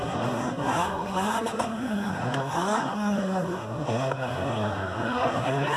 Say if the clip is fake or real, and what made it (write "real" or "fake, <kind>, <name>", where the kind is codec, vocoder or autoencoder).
fake, codec, SNAC